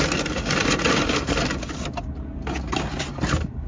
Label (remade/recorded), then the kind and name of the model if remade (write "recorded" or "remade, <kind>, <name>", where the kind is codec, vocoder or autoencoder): recorded